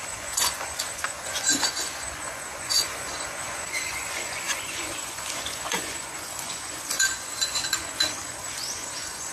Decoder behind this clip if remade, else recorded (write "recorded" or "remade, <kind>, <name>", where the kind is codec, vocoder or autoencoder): remade, vocoder, Vocos